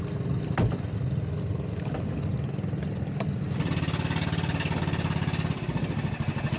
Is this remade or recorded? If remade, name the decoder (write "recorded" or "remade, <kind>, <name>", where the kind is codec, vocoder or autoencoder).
recorded